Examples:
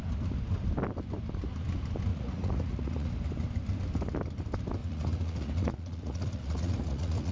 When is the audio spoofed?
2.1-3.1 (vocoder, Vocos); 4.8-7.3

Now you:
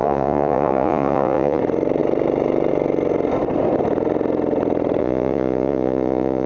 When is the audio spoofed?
0.0-1.6 (vocoder, Vocos); 5.0-6.5

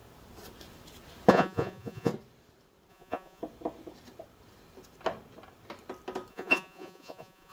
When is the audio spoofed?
1.3-2.1 (vocoder, Vocos); 2.9-3.4; 6.3-7.5

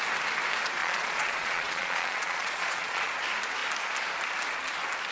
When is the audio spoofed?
0.8-3.2 (vocoder, Vocos)